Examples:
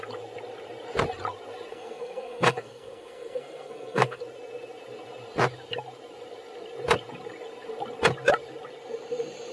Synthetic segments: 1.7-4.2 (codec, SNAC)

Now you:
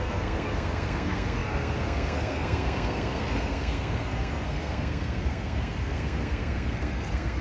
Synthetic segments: 0.0-7.4 (codec, SNAC)